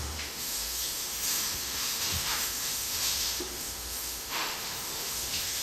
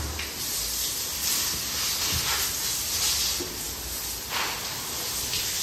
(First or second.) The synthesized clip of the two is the first